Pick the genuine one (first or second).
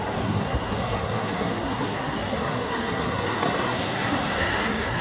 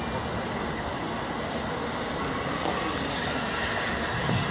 second